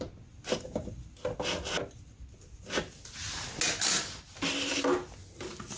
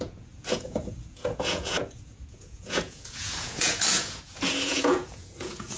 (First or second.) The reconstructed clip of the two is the second